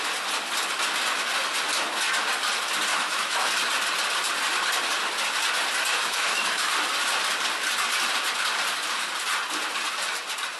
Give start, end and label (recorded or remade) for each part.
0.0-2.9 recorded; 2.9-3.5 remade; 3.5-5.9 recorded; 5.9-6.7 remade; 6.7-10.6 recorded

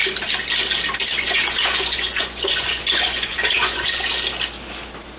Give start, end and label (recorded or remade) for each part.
0.0-1.1 recorded; 1.1-4.0 remade; 4.0-5.2 recorded